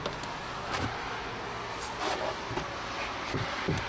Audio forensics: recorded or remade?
recorded